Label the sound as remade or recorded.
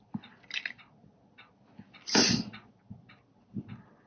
recorded